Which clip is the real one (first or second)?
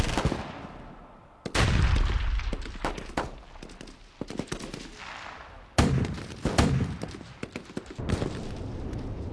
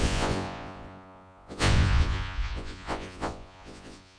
first